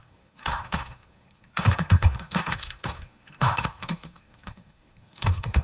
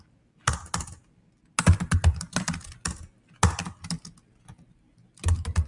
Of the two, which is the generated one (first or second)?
first